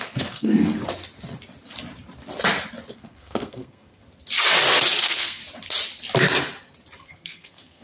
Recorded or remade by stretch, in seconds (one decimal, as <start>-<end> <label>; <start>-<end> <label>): 0.0-0.8 remade; 0.8-2.9 recorded; 2.9-4.0 remade; 4.0-5.0 recorded; 5.0-5.4 remade; 5.4-7.0 recorded; 7.0-7.8 remade

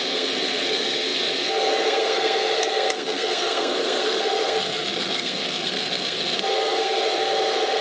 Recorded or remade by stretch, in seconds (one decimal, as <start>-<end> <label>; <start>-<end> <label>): 0.0-7.8 remade

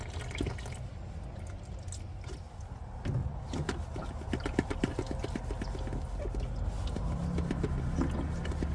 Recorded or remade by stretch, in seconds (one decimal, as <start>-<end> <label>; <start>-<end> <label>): 0.0-8.7 recorded

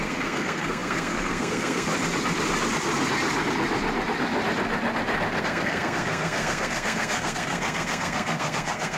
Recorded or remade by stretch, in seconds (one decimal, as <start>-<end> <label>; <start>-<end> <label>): 0.0-1.9 remade; 1.9-5.4 recorded; 5.4-9.0 remade

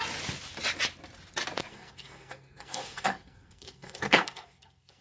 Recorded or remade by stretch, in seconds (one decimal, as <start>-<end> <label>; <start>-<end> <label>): 0.0-1.7 recorded; 1.7-5.0 remade

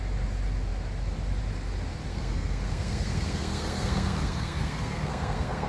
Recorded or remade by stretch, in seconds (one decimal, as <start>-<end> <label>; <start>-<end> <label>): 0.0-2.1 recorded; 2.1-5.7 remade

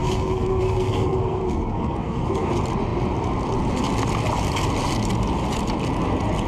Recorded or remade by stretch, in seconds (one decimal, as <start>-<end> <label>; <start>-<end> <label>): 0.0-2.5 remade; 2.5-6.5 recorded